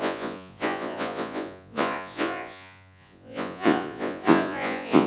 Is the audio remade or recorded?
remade